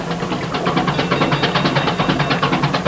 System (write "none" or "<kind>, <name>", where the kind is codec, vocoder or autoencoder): none